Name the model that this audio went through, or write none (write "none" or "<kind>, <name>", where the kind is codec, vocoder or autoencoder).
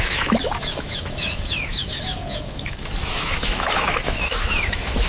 autoencoder, DAC-VAE